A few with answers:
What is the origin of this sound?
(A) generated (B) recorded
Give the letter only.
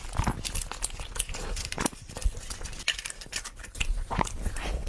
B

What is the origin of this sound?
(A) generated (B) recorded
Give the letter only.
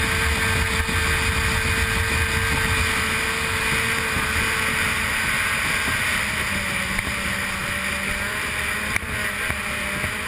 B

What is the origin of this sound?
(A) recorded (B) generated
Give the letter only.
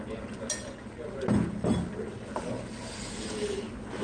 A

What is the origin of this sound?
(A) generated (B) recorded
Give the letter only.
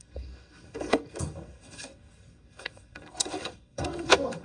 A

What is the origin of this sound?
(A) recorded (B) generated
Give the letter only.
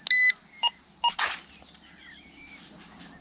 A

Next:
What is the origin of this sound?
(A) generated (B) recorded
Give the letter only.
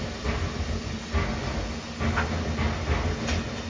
B